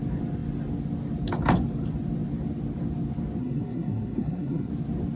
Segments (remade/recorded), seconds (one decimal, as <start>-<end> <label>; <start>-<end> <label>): 0.0-3.4 recorded; 3.4-4.7 remade; 4.7-5.2 recorded